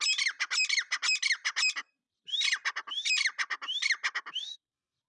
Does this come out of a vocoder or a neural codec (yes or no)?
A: no